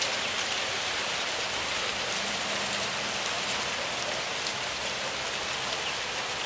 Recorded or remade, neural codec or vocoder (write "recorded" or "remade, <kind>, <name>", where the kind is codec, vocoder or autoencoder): recorded